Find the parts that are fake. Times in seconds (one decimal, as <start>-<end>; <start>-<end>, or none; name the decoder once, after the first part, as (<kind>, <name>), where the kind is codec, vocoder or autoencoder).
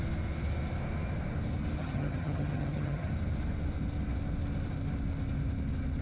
1.8-3.1 (vocoder, HiFi-GAN)